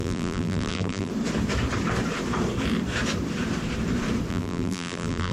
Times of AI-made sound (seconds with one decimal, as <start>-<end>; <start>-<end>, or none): 0.0-1.1; 4.3-5.3